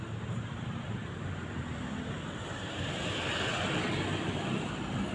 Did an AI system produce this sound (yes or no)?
no